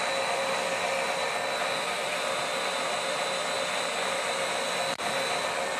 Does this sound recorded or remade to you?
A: recorded